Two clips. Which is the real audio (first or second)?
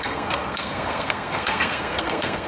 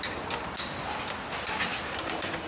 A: second